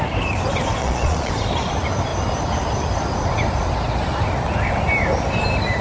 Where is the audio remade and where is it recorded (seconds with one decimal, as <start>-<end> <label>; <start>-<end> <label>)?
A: 0.0-0.8 recorded; 0.8-1.3 remade; 1.3-5.8 recorded